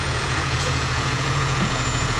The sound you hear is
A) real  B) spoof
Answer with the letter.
B